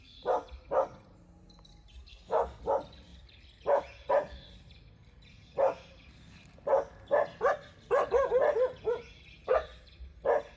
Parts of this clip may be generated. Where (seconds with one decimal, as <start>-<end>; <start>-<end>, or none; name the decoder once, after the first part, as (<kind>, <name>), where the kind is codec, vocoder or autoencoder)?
2.1-2.6 (codec, SNAC)